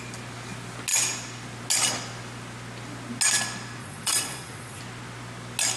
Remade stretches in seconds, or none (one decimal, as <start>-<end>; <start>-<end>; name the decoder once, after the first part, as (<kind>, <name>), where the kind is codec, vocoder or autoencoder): 3.8-4.8 (vocoder, Vocos)